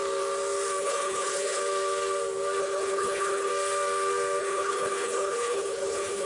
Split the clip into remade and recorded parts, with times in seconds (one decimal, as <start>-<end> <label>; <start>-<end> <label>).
0.0-0.8 recorded; 0.8-1.6 remade; 1.6-2.6 recorded; 2.6-3.5 remade; 3.5-4.4 recorded; 4.4-6.3 remade